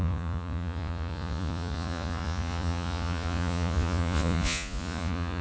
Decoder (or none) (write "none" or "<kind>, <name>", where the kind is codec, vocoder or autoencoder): vocoder, Vocos